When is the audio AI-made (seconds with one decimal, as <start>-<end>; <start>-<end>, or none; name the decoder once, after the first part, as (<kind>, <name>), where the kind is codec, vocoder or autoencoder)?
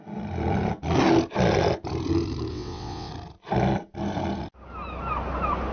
2.5-3.1 (vocoder, WaveNeXt)